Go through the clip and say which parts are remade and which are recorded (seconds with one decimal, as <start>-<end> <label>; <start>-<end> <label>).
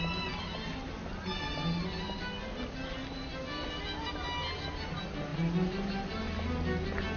0.0-7.2 recorded